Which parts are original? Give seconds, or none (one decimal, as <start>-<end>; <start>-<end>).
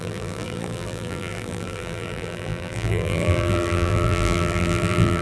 none